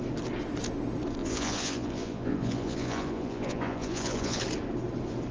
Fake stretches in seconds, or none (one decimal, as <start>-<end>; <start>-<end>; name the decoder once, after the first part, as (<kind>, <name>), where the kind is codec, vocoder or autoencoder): 1.2-4.4 (vocoder, Vocos)